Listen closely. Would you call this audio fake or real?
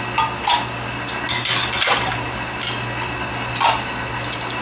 real